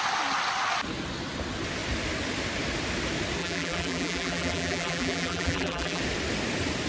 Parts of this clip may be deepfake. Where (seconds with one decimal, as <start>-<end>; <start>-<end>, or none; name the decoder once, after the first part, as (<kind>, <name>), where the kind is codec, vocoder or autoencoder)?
3.4-6.0 (vocoder, BigVGAN v2)